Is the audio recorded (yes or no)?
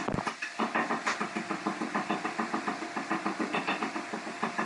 yes